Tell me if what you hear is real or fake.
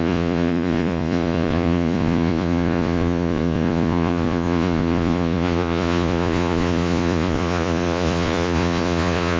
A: fake